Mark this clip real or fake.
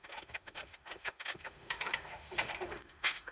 fake